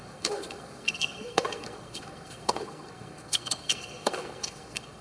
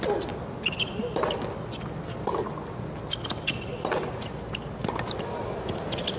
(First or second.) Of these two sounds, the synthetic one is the first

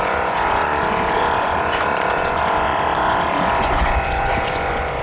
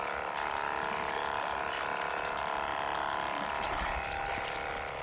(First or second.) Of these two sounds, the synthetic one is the first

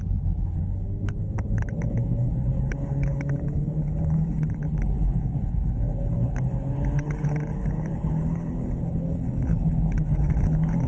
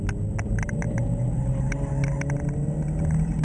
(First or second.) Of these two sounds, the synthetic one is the first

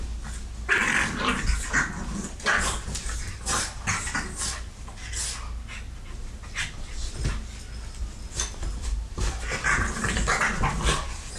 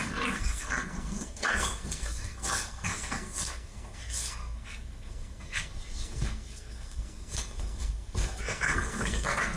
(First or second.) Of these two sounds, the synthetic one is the second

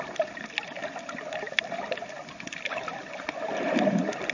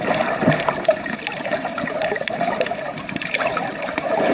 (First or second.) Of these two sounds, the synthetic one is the second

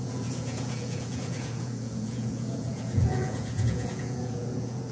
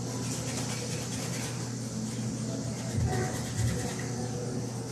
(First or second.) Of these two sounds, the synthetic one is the first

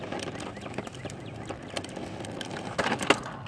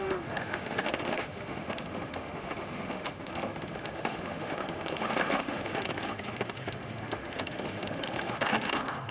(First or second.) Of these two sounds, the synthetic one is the second